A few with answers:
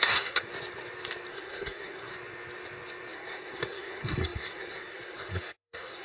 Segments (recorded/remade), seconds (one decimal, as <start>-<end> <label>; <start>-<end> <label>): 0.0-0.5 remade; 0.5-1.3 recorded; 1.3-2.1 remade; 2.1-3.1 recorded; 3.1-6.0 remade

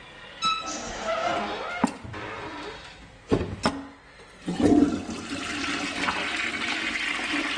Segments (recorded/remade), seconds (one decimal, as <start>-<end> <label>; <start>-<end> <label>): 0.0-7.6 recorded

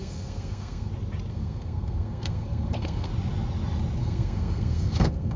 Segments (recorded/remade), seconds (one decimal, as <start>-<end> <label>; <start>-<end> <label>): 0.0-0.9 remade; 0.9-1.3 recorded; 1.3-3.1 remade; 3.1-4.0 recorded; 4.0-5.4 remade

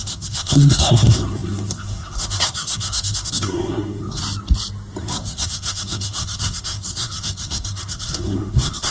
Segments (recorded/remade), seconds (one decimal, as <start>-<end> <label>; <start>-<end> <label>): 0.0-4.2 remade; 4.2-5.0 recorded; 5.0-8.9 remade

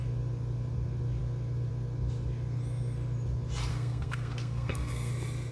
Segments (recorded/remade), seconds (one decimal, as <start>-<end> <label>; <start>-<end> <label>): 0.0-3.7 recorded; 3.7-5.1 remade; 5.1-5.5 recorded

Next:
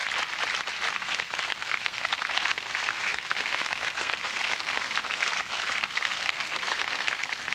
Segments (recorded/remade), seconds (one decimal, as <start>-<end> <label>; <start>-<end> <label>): 0.0-0.9 recorded; 0.9-7.5 remade